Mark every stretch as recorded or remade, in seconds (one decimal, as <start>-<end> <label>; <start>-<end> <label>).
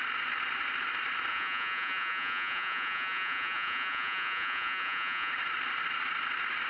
0.0-1.3 recorded; 1.3-5.3 remade; 5.3-6.7 recorded